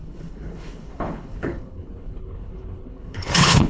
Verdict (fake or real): fake